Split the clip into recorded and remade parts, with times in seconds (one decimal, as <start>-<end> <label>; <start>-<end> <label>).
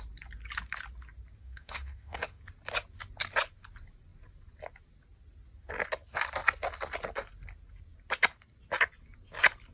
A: 0.0-1.4 recorded; 1.4-2.4 remade; 2.4-9.7 recorded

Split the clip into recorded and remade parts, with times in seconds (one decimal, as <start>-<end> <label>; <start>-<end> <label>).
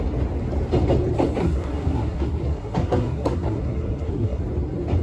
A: 0.0-1.4 recorded; 1.4-4.4 remade; 4.4-5.0 recorded